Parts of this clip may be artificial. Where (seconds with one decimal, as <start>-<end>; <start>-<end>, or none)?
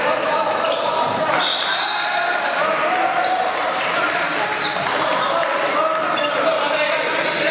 0.0-1.5; 2.3-5.4; 6.3-7.5